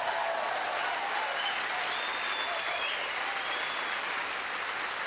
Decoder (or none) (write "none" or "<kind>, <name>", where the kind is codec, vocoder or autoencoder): none